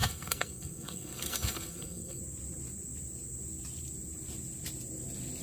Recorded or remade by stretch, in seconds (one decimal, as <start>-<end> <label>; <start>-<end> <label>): 0.0-2.2 remade; 2.2-5.4 recorded